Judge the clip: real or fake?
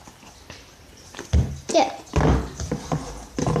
real